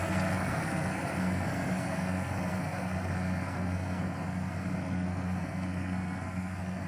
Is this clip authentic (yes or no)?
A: no